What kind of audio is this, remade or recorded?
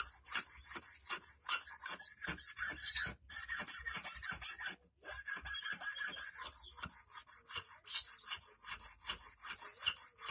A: recorded